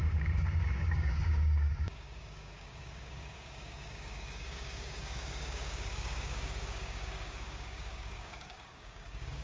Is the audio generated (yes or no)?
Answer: yes